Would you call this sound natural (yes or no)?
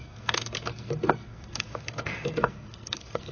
no